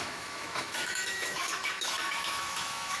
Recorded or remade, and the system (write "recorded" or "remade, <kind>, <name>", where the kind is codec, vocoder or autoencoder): remade, autoencoder, DAC-VAE